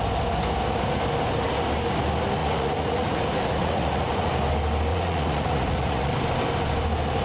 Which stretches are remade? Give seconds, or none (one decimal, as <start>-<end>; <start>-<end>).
2.4-3.2; 3.6-4.3; 4.9-6.1